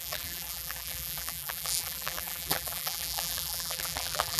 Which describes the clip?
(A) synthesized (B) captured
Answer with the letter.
A